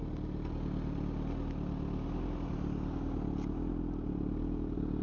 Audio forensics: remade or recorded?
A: recorded